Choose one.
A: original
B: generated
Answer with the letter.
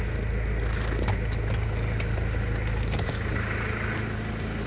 A